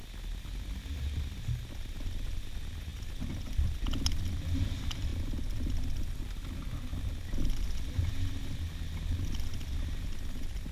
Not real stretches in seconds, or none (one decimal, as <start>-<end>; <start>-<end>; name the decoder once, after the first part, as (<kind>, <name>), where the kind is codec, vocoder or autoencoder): none